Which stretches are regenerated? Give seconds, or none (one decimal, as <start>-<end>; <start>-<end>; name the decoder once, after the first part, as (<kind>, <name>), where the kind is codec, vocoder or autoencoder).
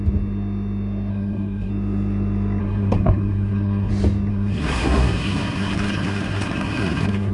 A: 1.1-1.7 (codec, SNAC); 2.6-3.9; 4.3-7.3